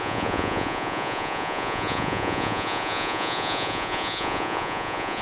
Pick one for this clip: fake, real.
fake